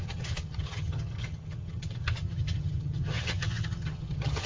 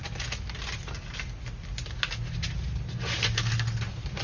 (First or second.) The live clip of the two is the second